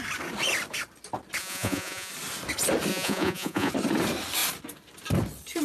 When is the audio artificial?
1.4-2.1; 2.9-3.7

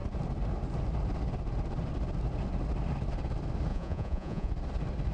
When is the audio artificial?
3.7-4.5